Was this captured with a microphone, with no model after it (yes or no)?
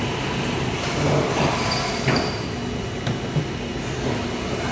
yes